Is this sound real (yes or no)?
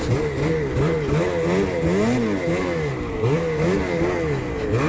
yes